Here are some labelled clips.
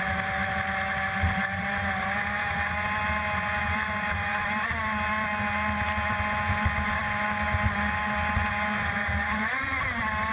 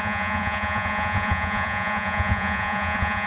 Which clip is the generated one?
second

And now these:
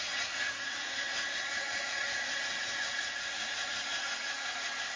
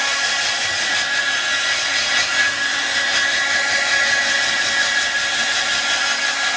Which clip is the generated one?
first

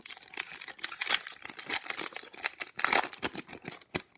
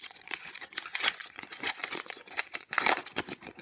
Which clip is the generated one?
second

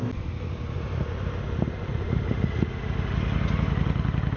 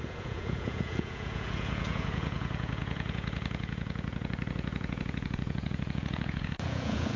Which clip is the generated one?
second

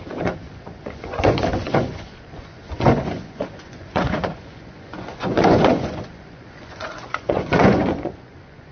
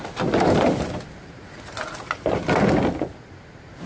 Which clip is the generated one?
first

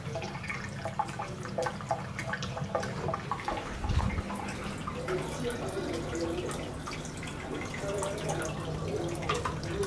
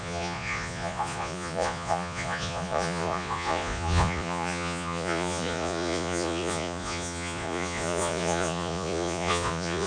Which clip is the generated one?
second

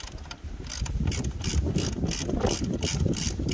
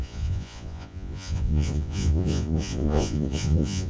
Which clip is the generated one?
second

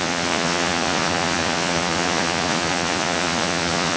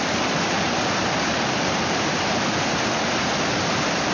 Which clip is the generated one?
first